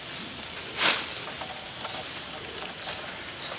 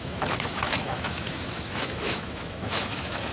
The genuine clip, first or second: first